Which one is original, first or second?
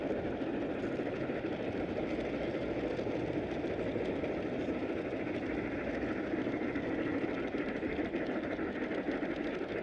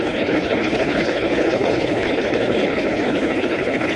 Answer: first